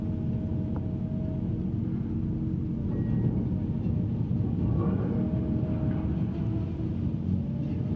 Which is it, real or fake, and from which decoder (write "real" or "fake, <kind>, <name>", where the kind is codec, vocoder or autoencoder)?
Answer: real